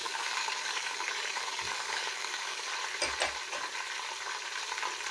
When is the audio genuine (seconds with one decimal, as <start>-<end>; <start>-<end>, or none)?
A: 2.7-5.1